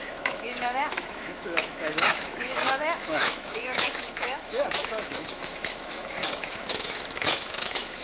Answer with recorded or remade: remade